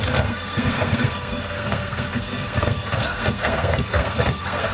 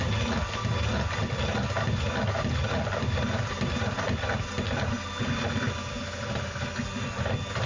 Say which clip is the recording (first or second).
second